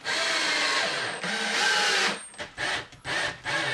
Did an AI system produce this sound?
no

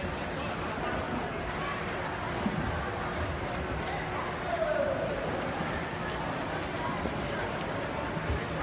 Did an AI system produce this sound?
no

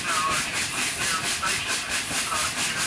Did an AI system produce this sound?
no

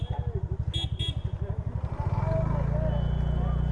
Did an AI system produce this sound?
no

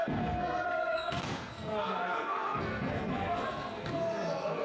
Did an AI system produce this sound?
yes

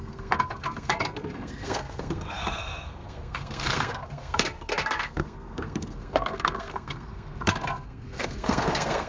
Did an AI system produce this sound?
yes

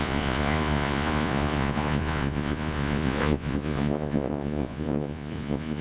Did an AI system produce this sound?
yes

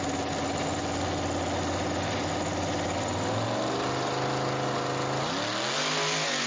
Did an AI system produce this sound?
no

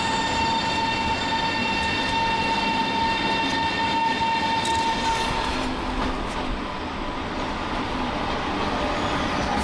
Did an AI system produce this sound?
no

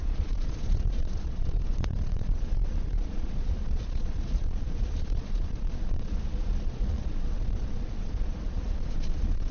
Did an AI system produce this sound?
yes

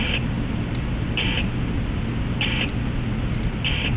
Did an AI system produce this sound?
no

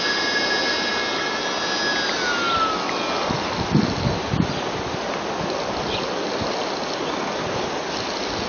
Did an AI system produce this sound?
no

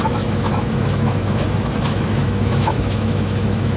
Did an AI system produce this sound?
yes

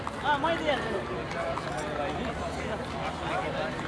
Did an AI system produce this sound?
no